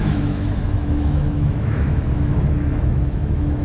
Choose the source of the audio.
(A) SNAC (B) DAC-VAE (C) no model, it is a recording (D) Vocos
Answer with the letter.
B